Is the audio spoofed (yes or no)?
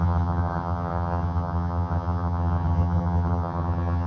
yes